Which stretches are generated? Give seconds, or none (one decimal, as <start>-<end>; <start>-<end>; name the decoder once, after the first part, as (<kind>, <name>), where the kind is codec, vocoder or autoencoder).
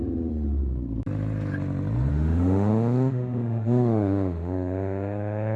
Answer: 2.1-5.6 (autoencoder, DAC-VAE)